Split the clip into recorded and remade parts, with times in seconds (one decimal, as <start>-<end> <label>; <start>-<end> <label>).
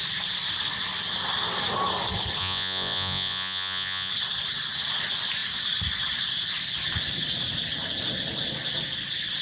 0.0-2.4 recorded; 2.4-4.1 remade; 4.1-9.4 recorded